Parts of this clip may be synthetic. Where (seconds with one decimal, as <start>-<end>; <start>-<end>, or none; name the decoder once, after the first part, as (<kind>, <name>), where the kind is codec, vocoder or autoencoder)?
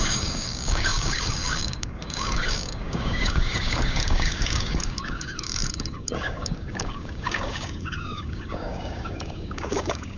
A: 0.0-10.2 (codec, DAC)